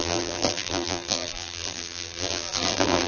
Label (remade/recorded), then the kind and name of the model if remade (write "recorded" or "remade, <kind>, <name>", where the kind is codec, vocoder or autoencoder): remade, vocoder, BigVGAN v2